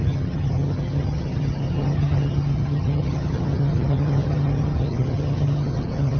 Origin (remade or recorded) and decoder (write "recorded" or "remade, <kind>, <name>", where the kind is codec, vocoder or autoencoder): remade, vocoder, HiFi-GAN